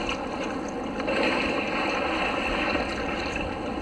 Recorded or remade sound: recorded